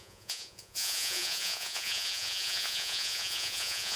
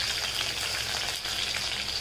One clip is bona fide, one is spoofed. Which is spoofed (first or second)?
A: first